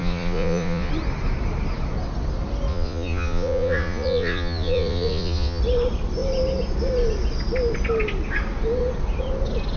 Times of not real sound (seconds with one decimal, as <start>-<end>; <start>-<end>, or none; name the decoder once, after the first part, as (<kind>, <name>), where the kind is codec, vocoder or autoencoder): 0.0-0.9 (vocoder, Vocos); 2.7-5.6